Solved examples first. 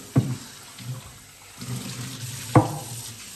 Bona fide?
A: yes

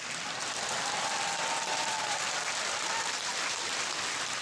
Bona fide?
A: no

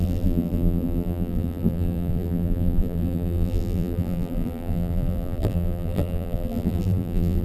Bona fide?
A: no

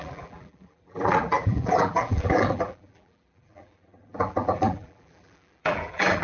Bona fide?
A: no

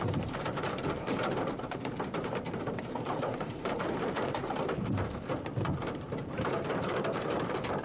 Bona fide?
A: no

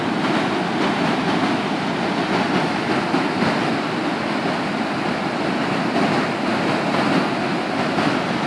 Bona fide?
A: yes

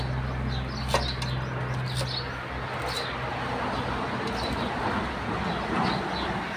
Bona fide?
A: yes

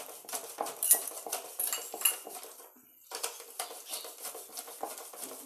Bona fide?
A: yes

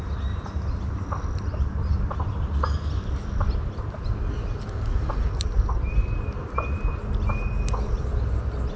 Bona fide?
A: yes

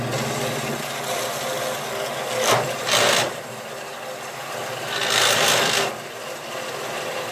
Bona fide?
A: no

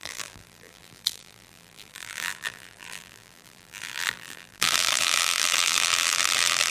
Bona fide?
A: no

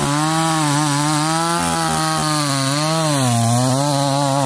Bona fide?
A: yes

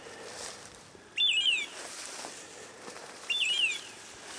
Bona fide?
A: yes